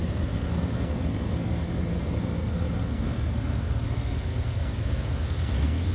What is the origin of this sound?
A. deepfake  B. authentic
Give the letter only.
A